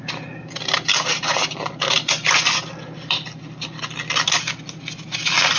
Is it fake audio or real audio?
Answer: real